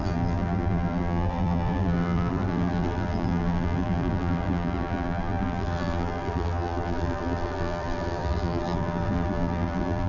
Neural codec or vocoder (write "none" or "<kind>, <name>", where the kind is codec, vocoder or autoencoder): vocoder, BigVGAN v2